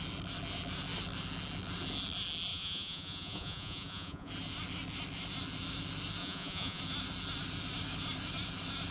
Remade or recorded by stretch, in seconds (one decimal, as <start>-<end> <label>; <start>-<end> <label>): 0.0-2.5 recorded; 2.5-4.3 remade; 4.3-6.2 recorded; 6.2-6.8 remade; 6.8-8.9 recorded